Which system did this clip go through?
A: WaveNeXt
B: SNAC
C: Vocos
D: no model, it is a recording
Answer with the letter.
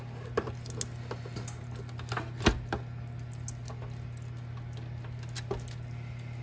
D